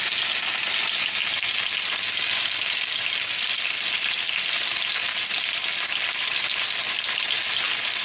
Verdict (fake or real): real